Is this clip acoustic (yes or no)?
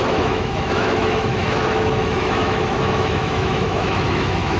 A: no